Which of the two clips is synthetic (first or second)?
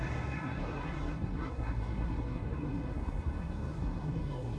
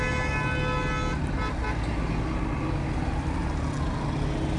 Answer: first